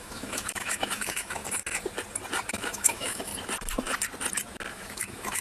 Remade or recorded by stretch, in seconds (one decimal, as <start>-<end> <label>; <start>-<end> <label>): 0.0-1.4 remade; 1.4-2.5 recorded; 2.5-3.3 remade; 3.3-4.7 recorded; 4.7-5.4 remade